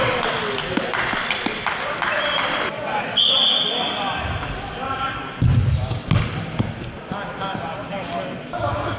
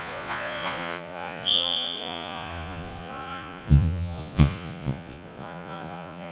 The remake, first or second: second